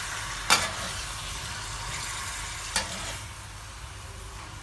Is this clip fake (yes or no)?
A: no